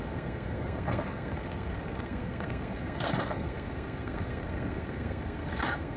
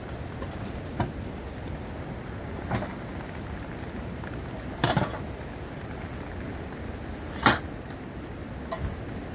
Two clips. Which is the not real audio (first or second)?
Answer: first